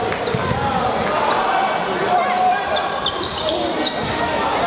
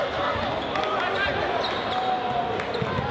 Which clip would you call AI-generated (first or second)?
first